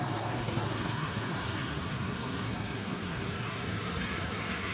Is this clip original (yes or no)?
no